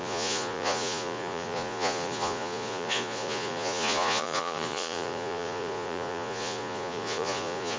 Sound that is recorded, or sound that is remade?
remade